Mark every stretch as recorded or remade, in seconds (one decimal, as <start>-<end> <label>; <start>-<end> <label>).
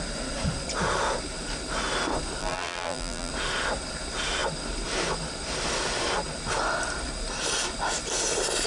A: 0.0-2.4 recorded; 2.4-3.3 remade; 3.3-8.7 recorded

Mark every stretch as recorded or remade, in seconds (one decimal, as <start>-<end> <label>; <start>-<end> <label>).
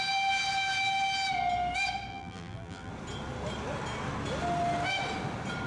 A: 0.0-2.1 recorded; 2.1-2.9 remade; 2.9-5.7 recorded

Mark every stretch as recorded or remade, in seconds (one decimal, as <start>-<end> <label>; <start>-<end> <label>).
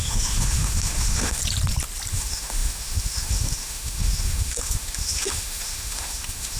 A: 0.0-1.4 remade; 1.4-2.1 recorded; 2.1-6.6 remade